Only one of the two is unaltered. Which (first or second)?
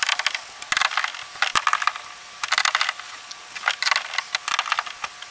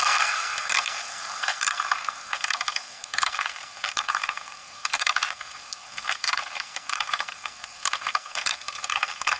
first